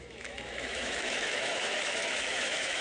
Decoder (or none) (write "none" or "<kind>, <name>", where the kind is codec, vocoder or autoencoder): autoencoder, DAC-VAE